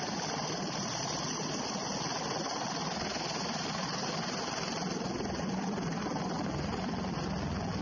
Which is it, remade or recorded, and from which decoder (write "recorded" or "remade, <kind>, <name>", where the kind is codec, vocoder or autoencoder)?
recorded